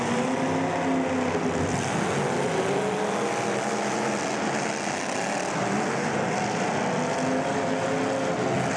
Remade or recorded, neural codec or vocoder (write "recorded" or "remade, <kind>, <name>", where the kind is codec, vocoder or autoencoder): recorded